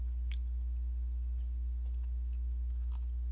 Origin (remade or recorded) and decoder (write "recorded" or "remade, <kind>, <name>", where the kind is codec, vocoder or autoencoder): recorded